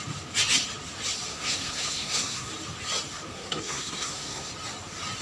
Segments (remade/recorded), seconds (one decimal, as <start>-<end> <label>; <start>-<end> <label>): 0.0-1.3 recorded; 1.3-2.5 remade; 2.5-3.3 recorded; 3.3-4.5 remade; 4.5-5.2 recorded